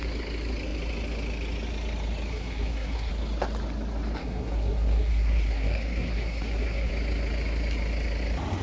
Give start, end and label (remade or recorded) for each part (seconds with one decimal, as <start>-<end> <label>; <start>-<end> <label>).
0.0-2.3 recorded; 2.3-3.1 remade; 3.1-4.2 recorded; 4.2-6.9 remade; 6.9-8.6 recorded